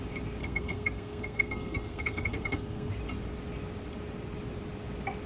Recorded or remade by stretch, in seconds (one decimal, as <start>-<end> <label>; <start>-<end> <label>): 0.0-0.4 recorded; 0.4-2.9 remade; 2.9-5.3 recorded